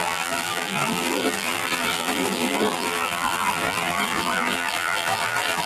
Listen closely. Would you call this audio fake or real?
fake